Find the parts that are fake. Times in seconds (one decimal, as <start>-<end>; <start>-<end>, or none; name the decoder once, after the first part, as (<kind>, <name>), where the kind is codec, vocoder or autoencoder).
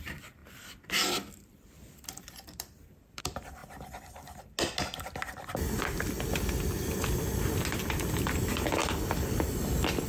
0.0-3.6 (vocoder, BigVGAN v2); 8.1-10.1